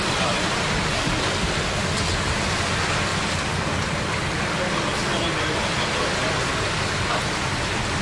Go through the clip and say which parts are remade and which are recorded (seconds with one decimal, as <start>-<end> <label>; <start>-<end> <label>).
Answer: 0.0-8.0 recorded